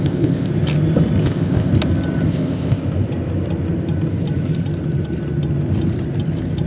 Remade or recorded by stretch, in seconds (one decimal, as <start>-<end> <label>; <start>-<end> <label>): 0.0-0.5 remade; 0.5-1.2 recorded; 1.2-1.7 remade; 1.7-2.3 recorded; 2.3-2.8 remade; 2.8-6.7 recorded

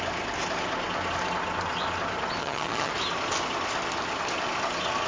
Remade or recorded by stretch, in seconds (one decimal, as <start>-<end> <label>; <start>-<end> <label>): 0.0-2.4 recorded; 2.4-2.9 remade; 2.9-5.1 recorded

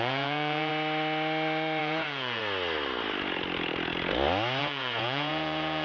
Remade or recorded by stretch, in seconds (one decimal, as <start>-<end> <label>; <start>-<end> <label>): 0.0-0.7 remade; 0.7-1.8 recorded; 1.8-2.4 remade; 2.4-4.6 recorded; 4.6-5.8 remade

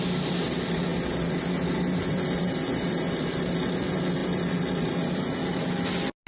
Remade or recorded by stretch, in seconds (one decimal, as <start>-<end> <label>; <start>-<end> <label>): 0.0-6.3 recorded

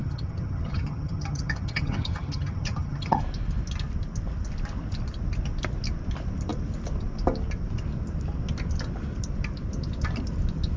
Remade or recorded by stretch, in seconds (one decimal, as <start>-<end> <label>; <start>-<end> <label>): 0.0-3.2 remade; 3.2-10.8 recorded